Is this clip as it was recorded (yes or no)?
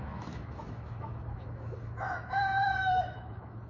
no